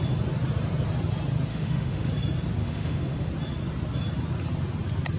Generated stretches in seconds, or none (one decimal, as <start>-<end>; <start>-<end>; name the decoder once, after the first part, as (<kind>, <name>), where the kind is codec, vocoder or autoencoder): 1.5-2.1 (autoencoder, DAC-VAE); 2.6-3.3